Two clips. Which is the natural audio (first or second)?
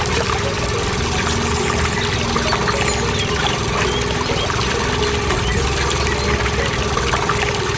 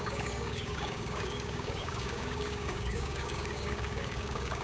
first